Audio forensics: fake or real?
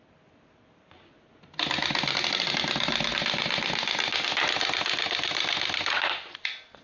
real